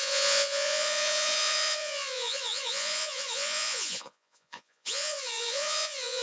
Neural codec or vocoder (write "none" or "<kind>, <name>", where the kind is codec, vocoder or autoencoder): vocoder, Vocos